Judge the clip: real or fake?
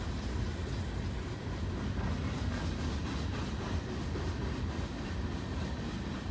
real